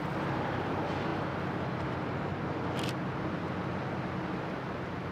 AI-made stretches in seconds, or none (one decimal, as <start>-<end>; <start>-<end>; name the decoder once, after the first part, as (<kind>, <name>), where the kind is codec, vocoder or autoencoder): none